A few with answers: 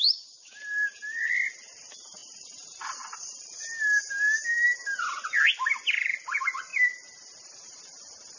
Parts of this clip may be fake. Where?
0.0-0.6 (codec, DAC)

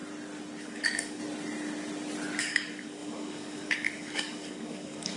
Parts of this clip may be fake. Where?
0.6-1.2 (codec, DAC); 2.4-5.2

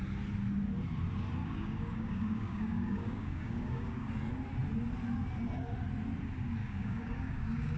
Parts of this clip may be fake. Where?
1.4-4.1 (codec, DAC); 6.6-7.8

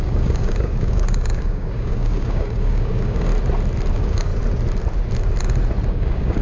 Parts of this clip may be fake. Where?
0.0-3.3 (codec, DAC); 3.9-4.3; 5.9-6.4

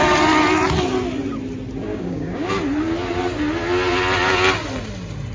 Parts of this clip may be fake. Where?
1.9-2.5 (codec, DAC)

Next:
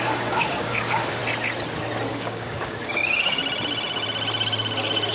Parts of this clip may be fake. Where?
0.0-1.2 (codec, DAC); 2.1-3.4

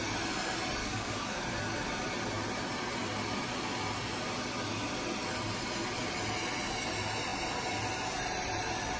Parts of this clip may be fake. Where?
0.8-1.4 (codec, DAC)

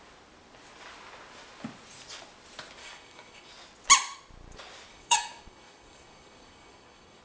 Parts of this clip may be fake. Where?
2.8-3.5 (codec, DAC); 4.9-7.2